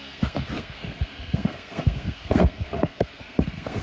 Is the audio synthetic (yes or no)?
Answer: yes